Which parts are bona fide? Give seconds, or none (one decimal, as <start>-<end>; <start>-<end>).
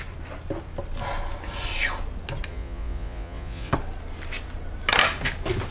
0.0-2.5; 3.7-5.7